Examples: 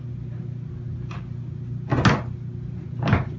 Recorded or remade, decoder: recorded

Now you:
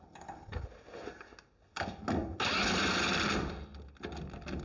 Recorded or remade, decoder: recorded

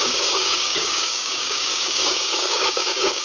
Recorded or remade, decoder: remade, codec, DAC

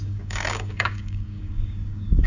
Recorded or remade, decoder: remade, codec, DAC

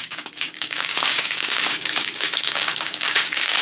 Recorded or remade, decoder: remade, codec, DAC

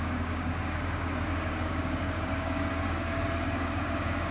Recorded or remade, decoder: remade, codec, DAC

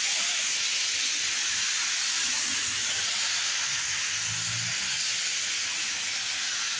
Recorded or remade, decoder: recorded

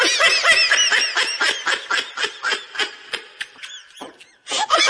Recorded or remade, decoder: recorded